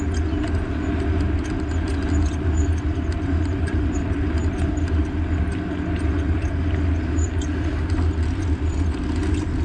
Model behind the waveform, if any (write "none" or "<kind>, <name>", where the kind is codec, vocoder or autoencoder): none